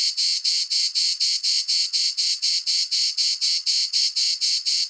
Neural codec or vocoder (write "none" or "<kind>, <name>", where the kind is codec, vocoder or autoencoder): vocoder, WaveNeXt